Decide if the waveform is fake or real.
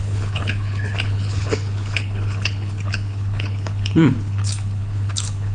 fake